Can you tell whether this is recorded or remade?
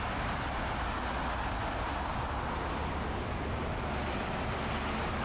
recorded